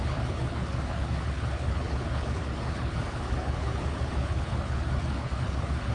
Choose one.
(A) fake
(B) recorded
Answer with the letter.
A